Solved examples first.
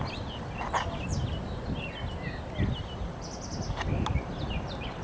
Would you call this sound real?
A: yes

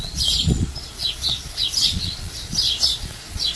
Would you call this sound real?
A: no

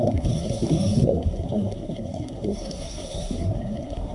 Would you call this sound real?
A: no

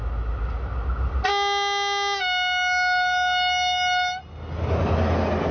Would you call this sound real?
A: yes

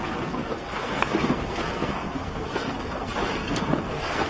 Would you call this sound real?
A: no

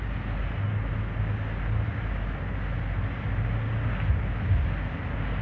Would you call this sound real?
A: yes